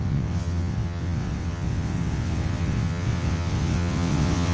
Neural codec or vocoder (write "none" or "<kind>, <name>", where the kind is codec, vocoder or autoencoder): vocoder, WaveNeXt